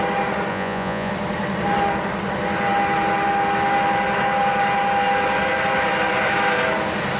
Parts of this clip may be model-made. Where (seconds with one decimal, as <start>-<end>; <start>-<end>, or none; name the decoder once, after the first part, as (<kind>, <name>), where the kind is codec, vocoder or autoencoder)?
0.5-1.1 (vocoder, Vocos)